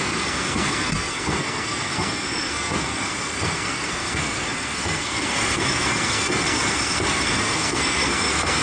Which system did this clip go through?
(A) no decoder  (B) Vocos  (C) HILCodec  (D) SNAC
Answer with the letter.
D